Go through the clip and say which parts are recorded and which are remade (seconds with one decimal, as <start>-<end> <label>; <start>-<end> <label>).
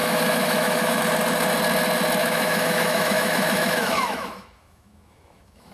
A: 0.0-1.0 remade; 1.0-2.2 recorded; 2.2-5.7 remade